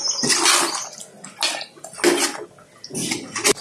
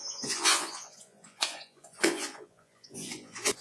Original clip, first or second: first